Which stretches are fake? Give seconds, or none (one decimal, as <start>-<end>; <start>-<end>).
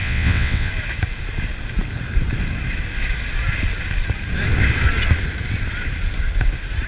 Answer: 0.0-0.7